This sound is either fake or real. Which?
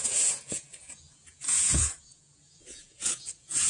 fake